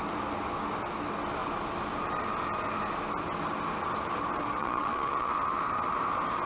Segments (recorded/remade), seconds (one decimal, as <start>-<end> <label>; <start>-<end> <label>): 0.0-4.6 recorded; 4.6-5.3 remade; 5.3-6.5 recorded